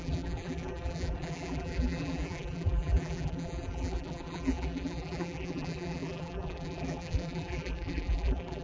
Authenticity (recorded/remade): remade